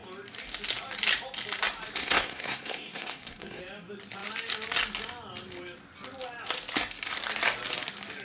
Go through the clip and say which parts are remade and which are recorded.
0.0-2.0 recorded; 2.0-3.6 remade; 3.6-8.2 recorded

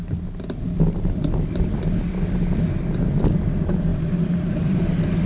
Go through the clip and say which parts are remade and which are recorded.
0.0-3.9 recorded; 3.9-4.8 remade; 4.8-5.3 recorded

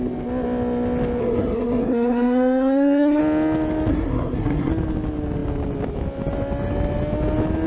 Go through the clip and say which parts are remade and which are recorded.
0.0-1.2 recorded; 1.2-3.2 remade; 3.2-3.9 recorded; 3.9-4.7 remade; 4.7-7.7 recorded

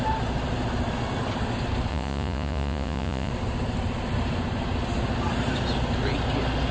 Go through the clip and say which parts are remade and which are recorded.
0.0-1.9 recorded; 1.9-3.3 remade; 3.3-6.7 recorded

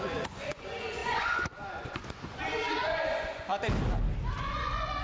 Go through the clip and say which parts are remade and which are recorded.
0.0-3.5 remade; 3.5-4.4 recorded; 4.4-5.0 remade